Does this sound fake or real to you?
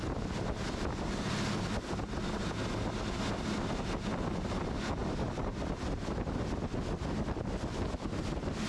real